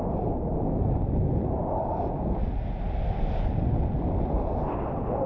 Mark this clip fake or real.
real